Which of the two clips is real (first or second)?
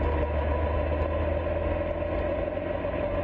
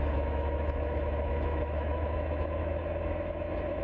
first